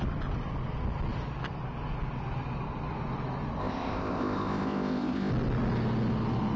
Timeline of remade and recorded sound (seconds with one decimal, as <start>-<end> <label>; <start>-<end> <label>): 0.0-3.6 recorded; 3.6-5.3 remade; 5.3-6.6 recorded